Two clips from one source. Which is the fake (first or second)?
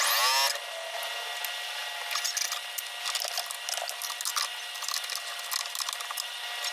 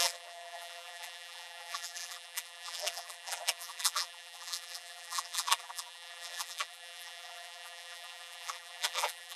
second